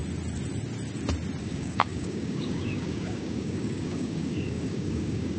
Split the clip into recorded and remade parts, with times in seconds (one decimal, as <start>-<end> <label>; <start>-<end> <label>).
0.0-1.4 recorded; 1.4-5.4 remade